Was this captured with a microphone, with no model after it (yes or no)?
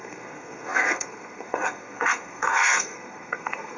no